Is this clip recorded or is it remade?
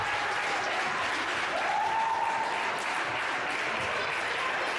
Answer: recorded